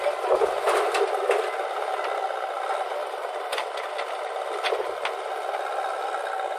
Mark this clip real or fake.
real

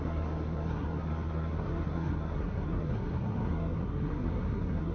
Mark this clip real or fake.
fake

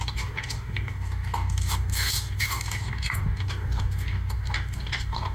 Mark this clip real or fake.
fake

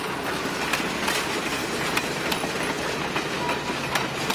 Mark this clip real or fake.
real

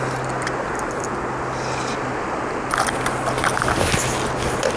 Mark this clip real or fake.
real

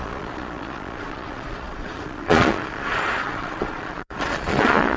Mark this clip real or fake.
fake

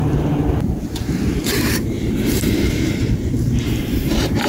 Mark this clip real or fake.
fake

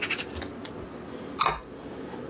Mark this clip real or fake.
real